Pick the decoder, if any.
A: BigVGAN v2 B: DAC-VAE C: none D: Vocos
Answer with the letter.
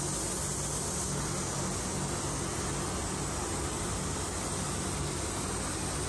C